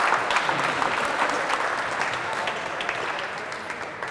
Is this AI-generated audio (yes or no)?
no